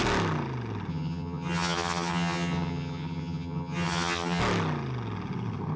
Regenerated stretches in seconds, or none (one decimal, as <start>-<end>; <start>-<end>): 0.9-4.4